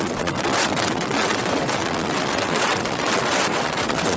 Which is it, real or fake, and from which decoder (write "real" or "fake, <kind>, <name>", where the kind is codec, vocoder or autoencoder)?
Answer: fake, vocoder, WaveNeXt